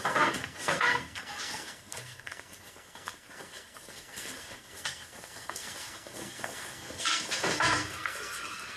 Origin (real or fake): fake